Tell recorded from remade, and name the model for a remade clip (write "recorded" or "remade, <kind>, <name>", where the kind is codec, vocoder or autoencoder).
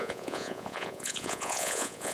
remade, vocoder, Vocos